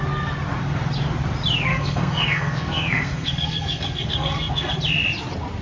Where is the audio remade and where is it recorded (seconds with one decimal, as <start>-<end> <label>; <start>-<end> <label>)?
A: 0.0-1.7 recorded; 1.7-4.7 remade; 4.7-5.6 recorded